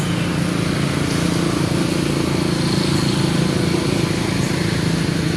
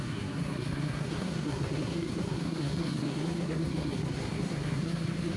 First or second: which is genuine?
first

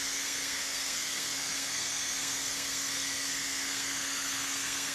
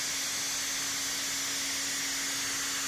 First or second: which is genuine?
second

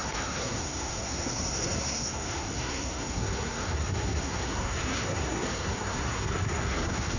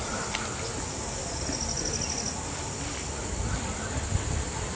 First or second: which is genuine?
second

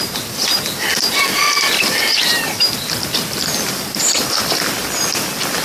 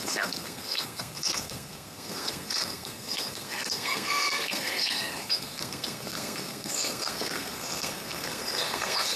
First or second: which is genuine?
first